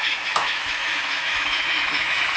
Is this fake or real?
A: fake